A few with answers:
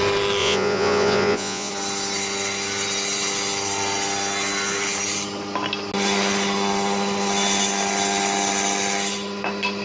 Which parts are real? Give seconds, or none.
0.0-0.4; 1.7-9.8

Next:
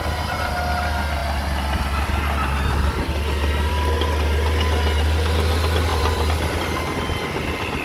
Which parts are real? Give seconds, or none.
0.0-5.9; 6.6-7.8

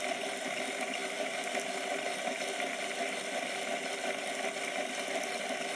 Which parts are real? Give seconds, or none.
0.0-5.8

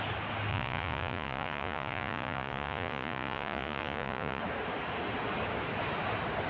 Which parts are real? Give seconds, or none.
0.0-0.5; 4.4-6.5

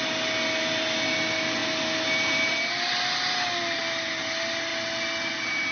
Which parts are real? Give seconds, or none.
0.0-5.7

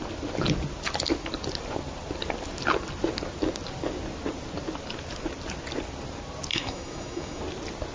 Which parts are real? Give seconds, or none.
0.0-6.5; 7.4-7.9

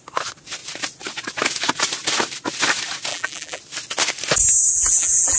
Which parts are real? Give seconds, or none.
0.0-3.1; 3.6-4.7